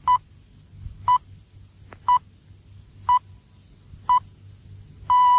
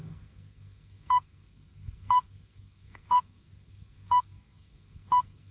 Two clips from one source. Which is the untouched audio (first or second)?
first